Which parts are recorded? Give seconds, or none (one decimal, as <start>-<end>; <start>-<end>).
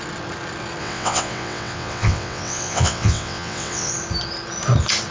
0.0-0.8; 3.9-5.1